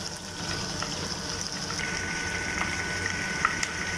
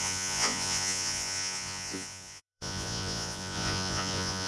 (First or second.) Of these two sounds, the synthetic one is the second